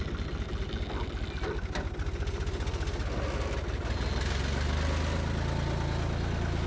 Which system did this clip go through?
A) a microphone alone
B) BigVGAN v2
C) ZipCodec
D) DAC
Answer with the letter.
A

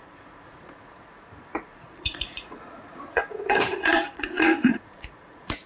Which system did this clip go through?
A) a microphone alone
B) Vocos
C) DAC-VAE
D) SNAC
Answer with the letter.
B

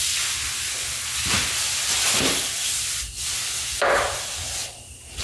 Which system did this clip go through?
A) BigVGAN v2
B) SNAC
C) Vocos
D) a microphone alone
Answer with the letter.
D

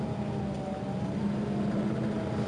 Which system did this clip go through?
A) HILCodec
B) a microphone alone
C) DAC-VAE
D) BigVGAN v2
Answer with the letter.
B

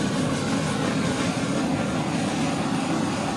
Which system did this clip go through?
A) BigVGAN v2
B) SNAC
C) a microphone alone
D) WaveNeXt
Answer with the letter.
C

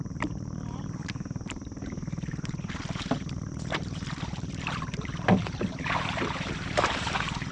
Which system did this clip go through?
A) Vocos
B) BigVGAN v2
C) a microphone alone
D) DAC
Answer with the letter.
B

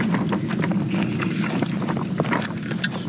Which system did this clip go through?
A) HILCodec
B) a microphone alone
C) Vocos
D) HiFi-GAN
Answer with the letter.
B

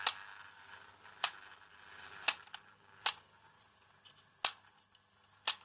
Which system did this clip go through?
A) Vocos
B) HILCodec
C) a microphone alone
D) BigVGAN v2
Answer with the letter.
C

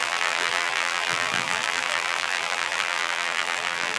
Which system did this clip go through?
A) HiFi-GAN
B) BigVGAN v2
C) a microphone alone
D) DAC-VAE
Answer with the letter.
B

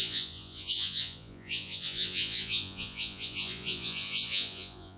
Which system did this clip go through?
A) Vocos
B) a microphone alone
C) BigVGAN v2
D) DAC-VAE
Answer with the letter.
A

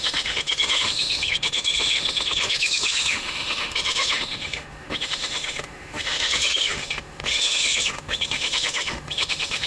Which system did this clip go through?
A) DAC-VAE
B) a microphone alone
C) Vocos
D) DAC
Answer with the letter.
A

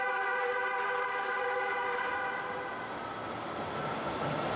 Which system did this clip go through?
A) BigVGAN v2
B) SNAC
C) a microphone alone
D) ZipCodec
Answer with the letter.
C